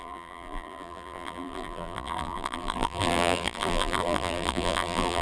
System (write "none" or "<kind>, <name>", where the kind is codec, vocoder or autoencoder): vocoder, BigVGAN v2